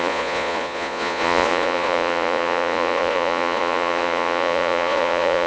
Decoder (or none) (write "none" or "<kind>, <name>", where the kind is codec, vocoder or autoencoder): vocoder, Vocos